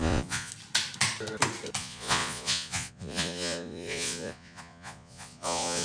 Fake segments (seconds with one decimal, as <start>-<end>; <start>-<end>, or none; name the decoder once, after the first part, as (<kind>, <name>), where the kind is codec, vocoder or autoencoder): 0.0-0.5 (vocoder, Vocos); 1.8-5.8